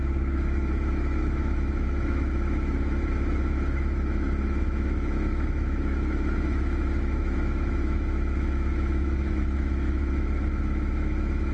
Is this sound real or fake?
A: fake